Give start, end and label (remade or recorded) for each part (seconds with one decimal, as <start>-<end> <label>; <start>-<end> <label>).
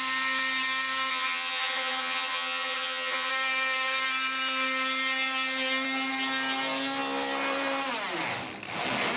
0.0-1.1 recorded; 1.1-3.3 remade; 3.3-9.2 recorded